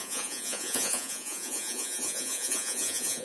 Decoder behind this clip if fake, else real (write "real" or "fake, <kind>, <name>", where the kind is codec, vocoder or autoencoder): fake, vocoder, Vocos